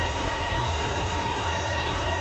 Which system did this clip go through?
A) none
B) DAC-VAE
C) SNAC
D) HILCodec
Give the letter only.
C